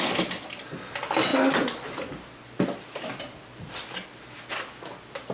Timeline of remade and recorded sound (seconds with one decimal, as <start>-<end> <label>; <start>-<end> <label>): 0.0-5.3 recorded